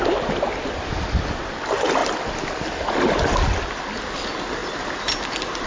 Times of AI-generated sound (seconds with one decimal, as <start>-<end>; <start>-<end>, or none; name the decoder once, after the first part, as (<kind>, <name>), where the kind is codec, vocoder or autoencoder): none